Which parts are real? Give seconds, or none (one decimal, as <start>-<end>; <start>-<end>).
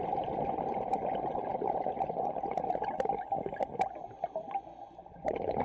1.5-4.9